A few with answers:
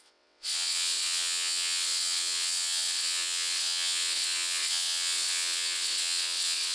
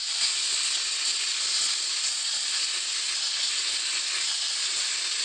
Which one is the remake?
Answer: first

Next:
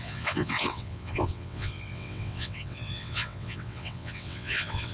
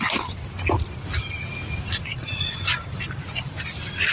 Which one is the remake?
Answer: first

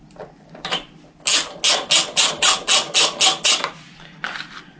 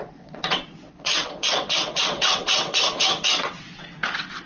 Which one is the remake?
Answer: second